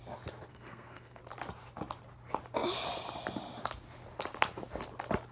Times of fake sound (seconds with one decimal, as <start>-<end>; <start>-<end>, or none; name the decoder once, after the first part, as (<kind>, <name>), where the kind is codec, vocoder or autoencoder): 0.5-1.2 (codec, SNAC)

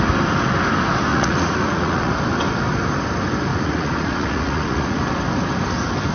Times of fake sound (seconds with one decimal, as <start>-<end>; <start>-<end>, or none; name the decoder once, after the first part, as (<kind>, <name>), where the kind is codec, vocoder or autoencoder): 1.1-2.1 (vocoder, Vocos); 3.5-5.0

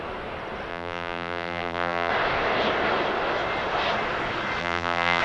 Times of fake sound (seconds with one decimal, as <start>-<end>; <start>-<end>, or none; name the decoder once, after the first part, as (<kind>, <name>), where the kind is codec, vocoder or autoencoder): 0.7-2.1 (vocoder, BigVGAN v2); 4.6-5.2

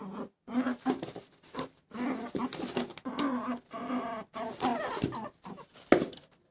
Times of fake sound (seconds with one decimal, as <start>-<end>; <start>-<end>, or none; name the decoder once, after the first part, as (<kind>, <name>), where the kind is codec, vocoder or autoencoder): 4.7-5.4 (vocoder, BigVGAN v2)

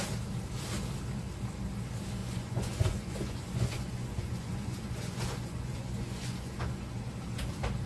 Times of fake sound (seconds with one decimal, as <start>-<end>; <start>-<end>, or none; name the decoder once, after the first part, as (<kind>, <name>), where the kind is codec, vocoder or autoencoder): 2.2-6.9 (vocoder, Vocos)

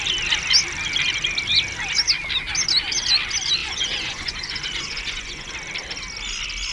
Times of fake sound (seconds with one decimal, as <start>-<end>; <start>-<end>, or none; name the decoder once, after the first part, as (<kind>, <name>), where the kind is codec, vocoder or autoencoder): 3.6-5.5 (vocoder, Vocos)